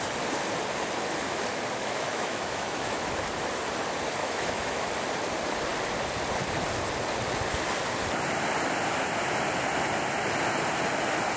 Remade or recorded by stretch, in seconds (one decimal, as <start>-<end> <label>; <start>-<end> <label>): 0.0-1.8 recorded; 1.8-3.1 remade; 3.1-4.2 recorded; 4.2-4.9 remade; 4.9-11.4 recorded